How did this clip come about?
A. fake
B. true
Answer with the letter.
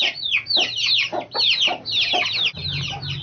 B